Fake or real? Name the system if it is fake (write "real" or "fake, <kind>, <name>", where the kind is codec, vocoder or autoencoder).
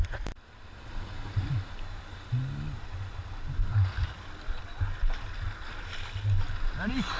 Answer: real